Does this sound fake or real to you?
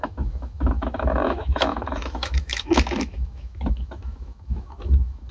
fake